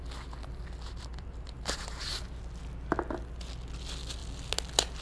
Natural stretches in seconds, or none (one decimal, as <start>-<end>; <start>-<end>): 0.0-1.1; 2.1-5.0